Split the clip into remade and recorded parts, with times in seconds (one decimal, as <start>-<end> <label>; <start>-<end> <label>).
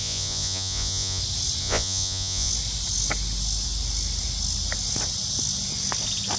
0.0-1.2 remade; 1.2-1.6 recorded; 1.6-2.5 remade; 2.5-6.4 recorded